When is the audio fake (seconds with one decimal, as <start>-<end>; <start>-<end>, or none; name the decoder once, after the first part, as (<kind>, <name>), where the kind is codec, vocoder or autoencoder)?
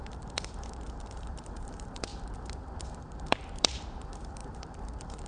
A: 0.0-2.1 (vocoder, BigVGAN v2); 2.8-5.3